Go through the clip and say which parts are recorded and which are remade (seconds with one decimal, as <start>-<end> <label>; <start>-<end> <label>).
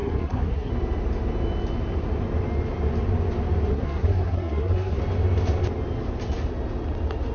0.0-0.7 remade; 0.7-3.7 recorded; 3.7-5.0 remade; 5.0-7.3 recorded